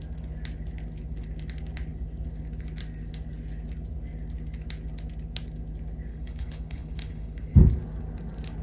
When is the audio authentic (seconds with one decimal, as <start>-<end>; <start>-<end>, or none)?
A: 0.0-6.1; 7.7-8.6